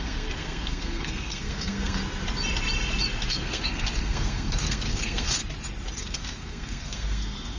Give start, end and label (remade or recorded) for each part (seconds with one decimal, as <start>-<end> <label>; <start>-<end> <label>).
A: 0.0-2.0 remade; 2.0-3.3 recorded; 3.3-5.4 remade; 5.4-6.0 recorded; 6.0-7.6 remade